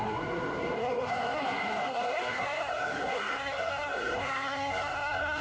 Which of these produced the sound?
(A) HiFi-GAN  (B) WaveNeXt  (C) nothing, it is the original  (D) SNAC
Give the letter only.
D